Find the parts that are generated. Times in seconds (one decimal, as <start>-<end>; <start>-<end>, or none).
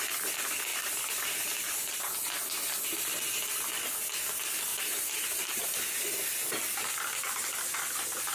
4.7-5.7